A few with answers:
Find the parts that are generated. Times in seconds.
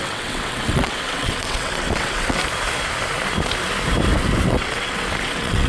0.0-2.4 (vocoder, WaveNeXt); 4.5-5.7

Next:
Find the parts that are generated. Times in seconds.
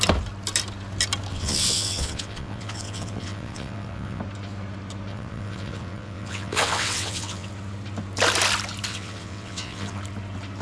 1.3-4.2 (vocoder, WaveNeXt); 5.1-7.5; 8.9-10.0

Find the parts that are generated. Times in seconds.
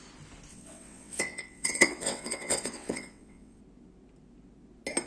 0.5-3.6 (vocoder, WaveNeXt)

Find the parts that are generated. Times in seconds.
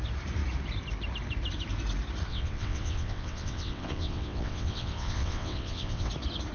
2.3-6.1 (vocoder, WaveNeXt)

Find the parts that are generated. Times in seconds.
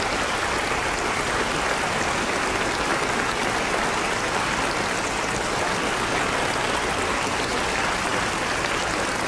none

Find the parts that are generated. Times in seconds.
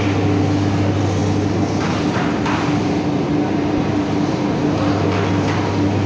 none